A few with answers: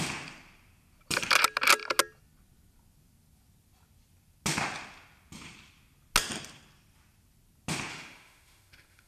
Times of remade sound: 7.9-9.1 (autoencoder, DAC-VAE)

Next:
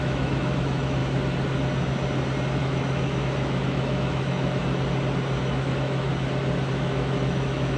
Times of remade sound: 0.0-1.0 (autoencoder, DAC-VAE); 2.6-4.6; 5.4-6.1; 6.7-7.8

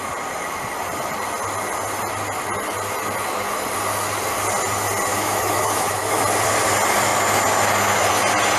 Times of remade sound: 5.1-6.2 (autoencoder, DAC-VAE)

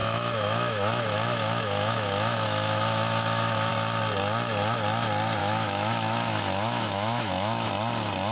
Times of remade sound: 0.0-3.7 (autoencoder, DAC-VAE); 5.4-7.7

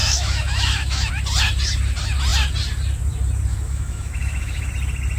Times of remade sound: 0.0-1.1 (autoencoder, DAC-VAE); 3.5-4.7